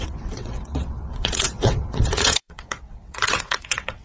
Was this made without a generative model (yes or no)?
no